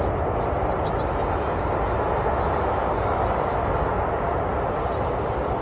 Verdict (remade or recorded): recorded